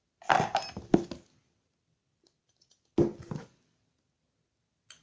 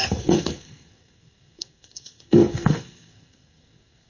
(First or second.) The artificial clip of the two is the second